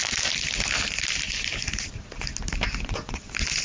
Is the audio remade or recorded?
recorded